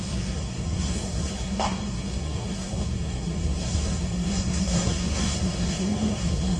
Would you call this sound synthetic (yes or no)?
yes